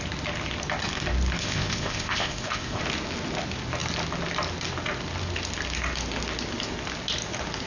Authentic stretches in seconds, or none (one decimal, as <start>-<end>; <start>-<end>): 0.0-1.4; 2.8-7.7